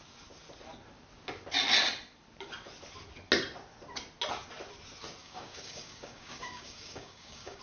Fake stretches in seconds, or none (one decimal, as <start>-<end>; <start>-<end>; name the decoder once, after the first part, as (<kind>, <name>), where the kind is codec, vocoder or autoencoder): 5.2-7.6 (codec, DAC)